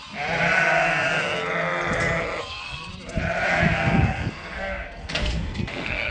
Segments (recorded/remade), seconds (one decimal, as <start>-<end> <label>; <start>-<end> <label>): 0.0-2.4 recorded; 2.4-2.9 remade; 2.9-3.5 recorded; 3.5-6.1 remade

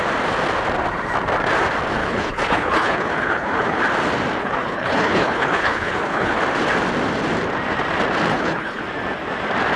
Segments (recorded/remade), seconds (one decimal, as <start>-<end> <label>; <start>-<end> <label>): 0.0-2.0 recorded; 2.0-3.8 remade; 3.8-4.4 recorded; 4.4-6.4 remade; 6.4-8.3 recorded; 8.3-8.8 remade; 8.8-9.8 recorded

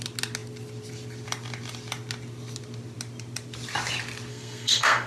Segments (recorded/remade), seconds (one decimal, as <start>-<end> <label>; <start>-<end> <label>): 0.0-4.3 recorded; 4.3-5.1 remade

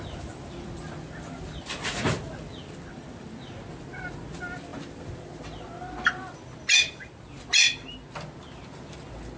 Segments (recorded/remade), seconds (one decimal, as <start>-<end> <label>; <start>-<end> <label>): 0.0-9.4 recorded

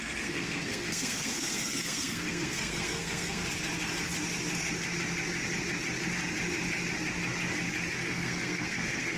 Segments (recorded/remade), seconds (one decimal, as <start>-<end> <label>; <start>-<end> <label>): 0.0-3.4 remade; 3.4-8.0 recorded; 8.0-9.2 remade

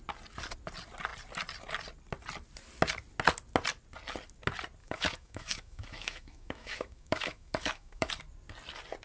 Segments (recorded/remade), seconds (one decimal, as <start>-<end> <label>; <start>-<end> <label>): 0.0-4.8 recorded; 4.8-8.1 remade; 8.1-9.0 recorded

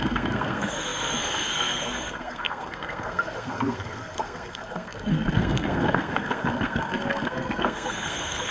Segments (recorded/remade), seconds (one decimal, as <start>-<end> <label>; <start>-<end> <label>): 0.0-8.5 remade

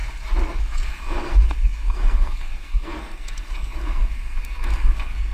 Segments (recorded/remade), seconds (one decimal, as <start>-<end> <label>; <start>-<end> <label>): 0.0-0.6 recorded; 0.6-5.3 remade